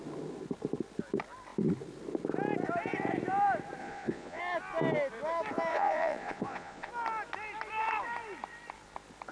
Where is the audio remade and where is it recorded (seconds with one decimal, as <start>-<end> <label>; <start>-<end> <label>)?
0.0-3.8 recorded; 3.8-4.4 remade; 4.4-5.7 recorded; 5.7-6.9 remade; 6.9-9.3 recorded